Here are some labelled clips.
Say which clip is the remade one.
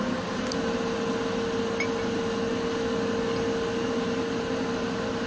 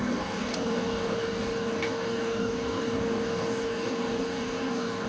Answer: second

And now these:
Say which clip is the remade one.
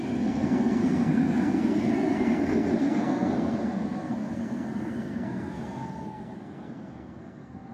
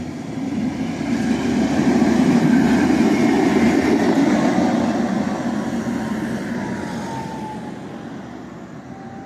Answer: first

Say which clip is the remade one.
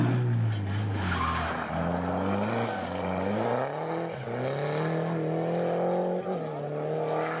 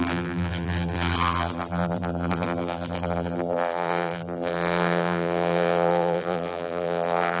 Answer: second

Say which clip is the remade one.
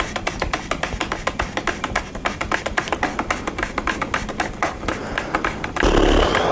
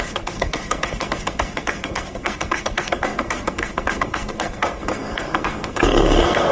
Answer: second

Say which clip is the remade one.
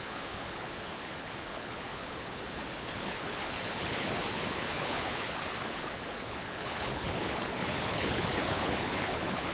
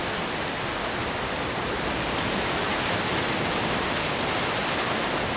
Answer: first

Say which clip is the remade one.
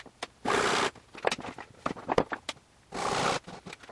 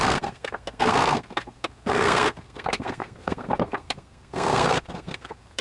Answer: second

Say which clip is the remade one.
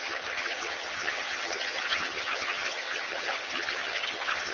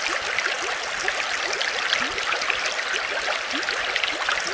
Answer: first